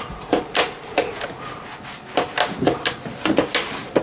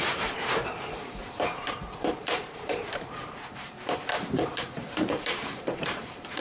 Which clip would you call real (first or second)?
first